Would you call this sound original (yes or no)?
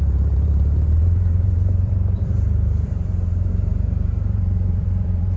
no